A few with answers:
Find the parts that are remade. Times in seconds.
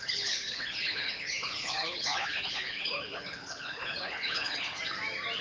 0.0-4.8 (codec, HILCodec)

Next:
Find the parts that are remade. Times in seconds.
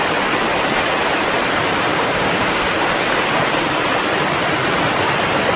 1.9-2.6 (codec, DAC)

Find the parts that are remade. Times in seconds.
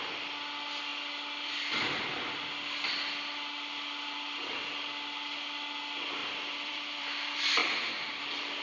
6.2-7.1 (vocoder, BigVGAN v2)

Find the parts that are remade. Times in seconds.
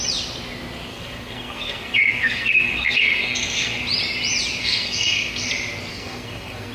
0.9-3.8 (codec, SNAC); 4.6-5.5; 5.9-6.7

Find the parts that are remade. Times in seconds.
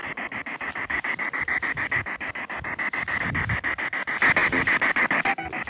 4.4-5.3 (vocoder, BigVGAN v2)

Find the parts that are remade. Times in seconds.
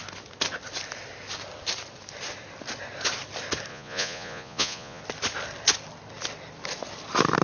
3.7-5.0 (vocoder, Vocos)